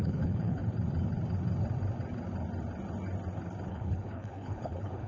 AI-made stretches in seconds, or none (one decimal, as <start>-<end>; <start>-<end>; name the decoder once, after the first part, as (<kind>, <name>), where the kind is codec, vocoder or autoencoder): 0.0-0.6 (codec, HILCodec); 3.7-5.1